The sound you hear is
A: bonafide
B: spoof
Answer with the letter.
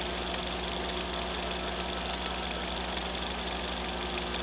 A